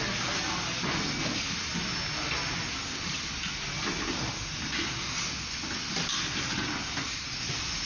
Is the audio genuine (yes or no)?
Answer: yes